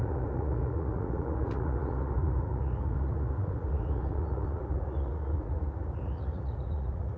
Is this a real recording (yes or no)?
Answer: no